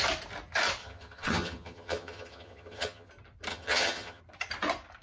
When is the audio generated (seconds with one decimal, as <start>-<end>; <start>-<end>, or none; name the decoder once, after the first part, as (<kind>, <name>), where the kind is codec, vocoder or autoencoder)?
0.8-3.1 (vocoder, HiFi-GAN); 3.5-4.2